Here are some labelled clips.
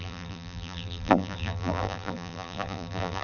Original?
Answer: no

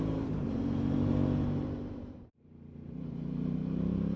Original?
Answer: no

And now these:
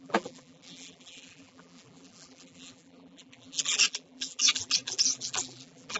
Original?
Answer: no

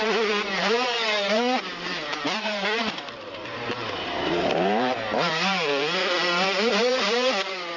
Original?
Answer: no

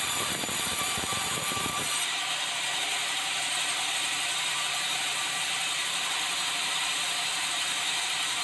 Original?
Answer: no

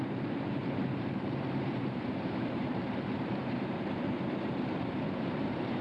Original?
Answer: no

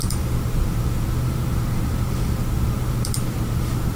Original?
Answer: no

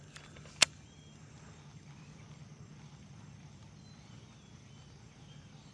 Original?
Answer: yes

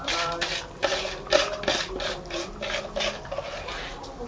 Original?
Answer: yes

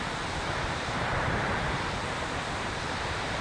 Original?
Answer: no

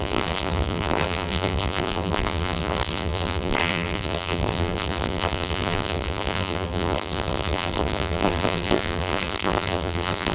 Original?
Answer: no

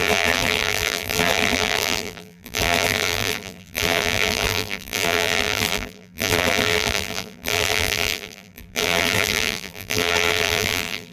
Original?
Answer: no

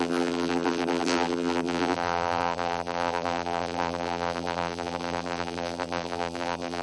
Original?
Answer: no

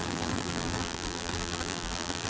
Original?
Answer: no